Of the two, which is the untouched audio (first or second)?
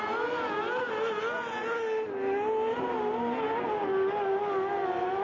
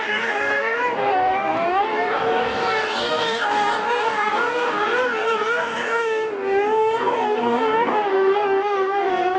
first